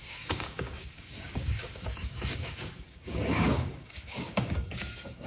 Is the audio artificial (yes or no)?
yes